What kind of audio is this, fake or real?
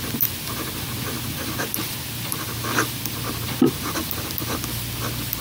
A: real